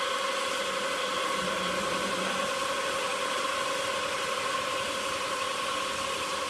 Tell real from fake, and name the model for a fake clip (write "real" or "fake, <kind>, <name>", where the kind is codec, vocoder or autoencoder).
real